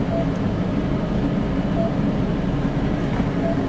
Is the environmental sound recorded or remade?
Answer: recorded